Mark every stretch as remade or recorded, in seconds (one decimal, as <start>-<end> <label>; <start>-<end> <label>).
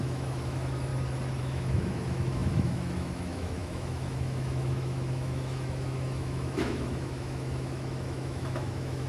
0.0-0.9 remade; 0.9-1.4 recorded; 1.4-9.1 remade